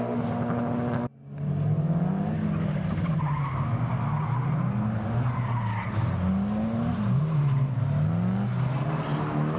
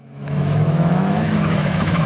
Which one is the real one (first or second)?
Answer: first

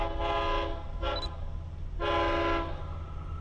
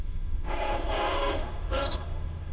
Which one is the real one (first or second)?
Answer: first